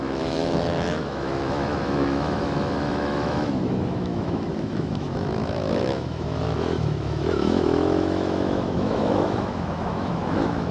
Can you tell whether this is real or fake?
fake